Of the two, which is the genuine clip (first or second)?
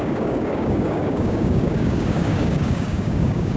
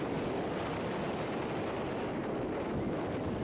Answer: second